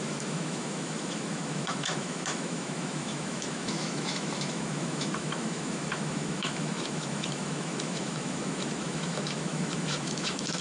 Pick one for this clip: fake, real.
fake